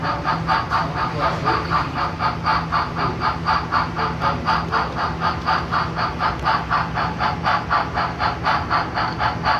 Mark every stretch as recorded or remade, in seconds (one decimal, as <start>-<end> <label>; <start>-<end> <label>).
0.0-9.6 recorded